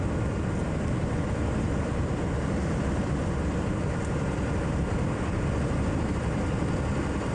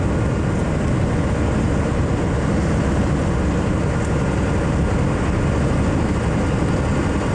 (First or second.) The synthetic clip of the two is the first